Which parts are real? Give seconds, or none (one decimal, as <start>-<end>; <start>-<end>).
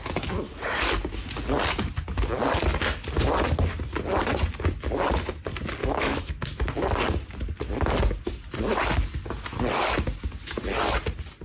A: 0.0-5.8; 6.3-11.4